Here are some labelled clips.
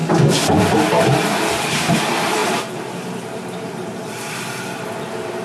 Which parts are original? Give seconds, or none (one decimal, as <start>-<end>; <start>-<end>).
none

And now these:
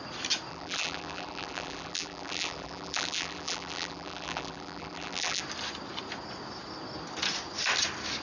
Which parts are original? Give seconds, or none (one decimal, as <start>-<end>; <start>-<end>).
0.0-0.5; 5.4-8.2

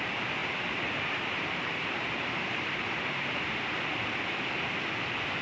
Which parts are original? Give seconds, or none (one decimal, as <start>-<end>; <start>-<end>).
0.0-0.4; 3.6-5.4

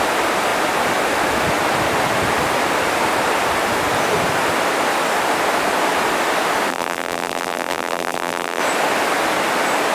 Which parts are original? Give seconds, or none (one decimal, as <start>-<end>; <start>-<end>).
0.0-6.7; 8.6-9.9